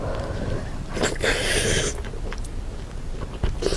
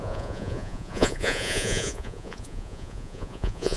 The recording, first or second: first